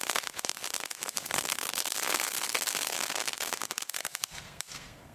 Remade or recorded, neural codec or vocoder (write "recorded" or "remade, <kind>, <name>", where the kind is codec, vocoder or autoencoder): remade, codec, SNAC